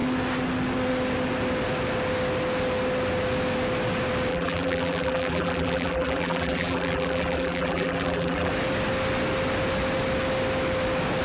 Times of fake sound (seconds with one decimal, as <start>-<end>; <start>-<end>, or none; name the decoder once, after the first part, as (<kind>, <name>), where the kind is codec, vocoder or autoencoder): 4.3-8.5 (vocoder, BigVGAN v2)